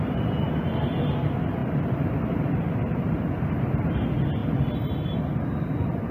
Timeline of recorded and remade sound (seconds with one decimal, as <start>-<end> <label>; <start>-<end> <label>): 0.0-1.6 recorded; 1.6-2.6 remade; 2.6-4.4 recorded; 4.4-5.1 remade; 5.1-6.1 recorded